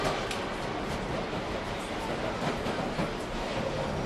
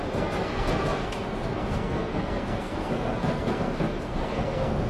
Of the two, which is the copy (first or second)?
second